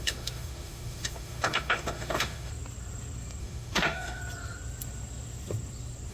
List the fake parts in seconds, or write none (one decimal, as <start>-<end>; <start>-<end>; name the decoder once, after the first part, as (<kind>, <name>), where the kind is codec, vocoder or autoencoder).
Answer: 0.0-2.5 (autoencoder, DAC-VAE); 3.4-4.2